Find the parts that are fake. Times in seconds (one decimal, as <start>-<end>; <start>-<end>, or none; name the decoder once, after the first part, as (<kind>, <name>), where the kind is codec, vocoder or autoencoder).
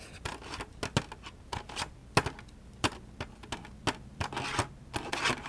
none